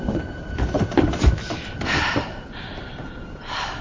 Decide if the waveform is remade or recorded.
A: remade